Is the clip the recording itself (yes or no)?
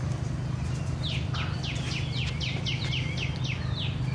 yes